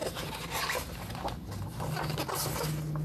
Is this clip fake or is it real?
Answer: real